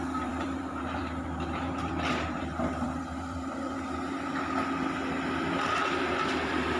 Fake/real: fake